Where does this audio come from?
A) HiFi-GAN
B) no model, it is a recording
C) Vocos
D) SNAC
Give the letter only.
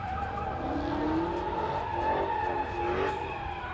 B